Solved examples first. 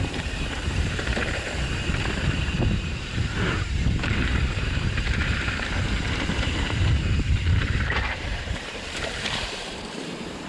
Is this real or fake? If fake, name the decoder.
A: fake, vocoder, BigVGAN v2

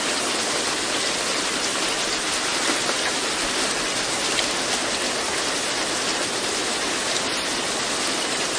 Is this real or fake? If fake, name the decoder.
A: real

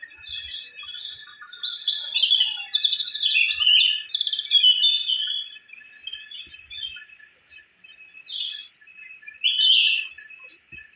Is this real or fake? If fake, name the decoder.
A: real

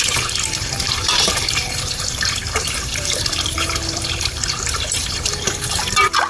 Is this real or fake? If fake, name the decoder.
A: fake, vocoder, BigVGAN v2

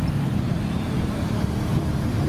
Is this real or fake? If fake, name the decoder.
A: real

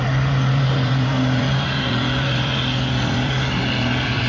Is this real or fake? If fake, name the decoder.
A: fake, vocoder, BigVGAN v2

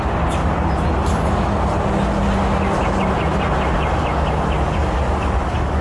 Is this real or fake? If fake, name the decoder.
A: real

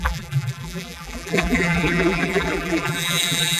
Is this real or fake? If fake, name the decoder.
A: fake, vocoder, BigVGAN v2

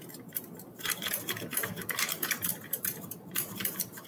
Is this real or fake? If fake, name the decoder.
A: fake, vocoder, BigVGAN v2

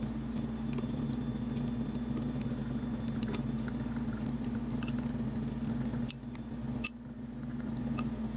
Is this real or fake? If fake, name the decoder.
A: real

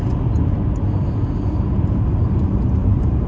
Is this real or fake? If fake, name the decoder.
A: real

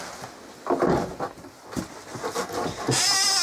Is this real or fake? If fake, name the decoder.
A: real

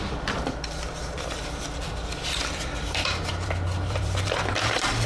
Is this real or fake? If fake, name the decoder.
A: fake, vocoder, BigVGAN v2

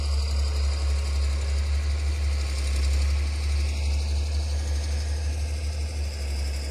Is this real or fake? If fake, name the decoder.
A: real